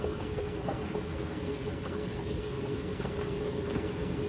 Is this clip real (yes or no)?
no